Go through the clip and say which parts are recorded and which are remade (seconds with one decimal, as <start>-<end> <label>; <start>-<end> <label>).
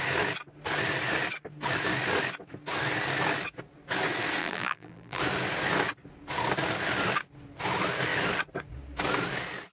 0.0-4.4 recorded; 4.4-5.2 remade; 5.2-9.7 recorded